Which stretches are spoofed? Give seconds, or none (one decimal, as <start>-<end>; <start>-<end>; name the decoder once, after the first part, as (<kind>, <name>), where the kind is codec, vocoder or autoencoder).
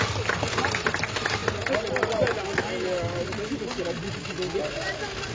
none